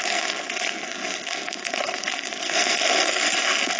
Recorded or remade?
remade